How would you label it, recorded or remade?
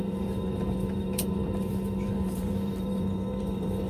remade